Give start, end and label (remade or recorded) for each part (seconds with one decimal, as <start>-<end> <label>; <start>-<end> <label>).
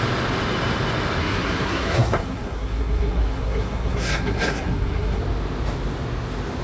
0.0-1.2 recorded; 1.2-5.2 remade; 5.2-6.6 recorded